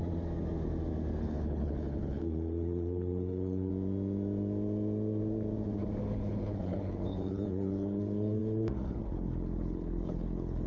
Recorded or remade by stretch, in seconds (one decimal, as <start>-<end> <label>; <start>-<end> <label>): 0.0-1.2 recorded; 1.2-3.7 remade; 3.7-6.0 recorded; 6.0-10.7 remade